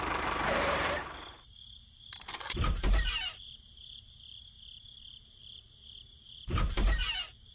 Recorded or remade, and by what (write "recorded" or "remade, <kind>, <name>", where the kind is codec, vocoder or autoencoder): remade, vocoder, BigVGAN v2